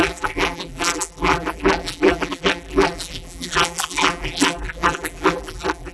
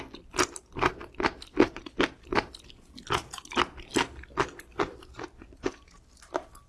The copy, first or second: first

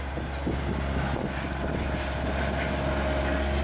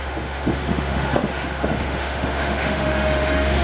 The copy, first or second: second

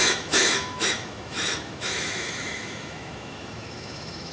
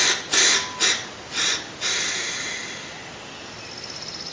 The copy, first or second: first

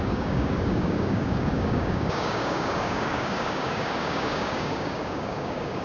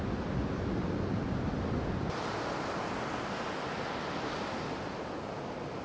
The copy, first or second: first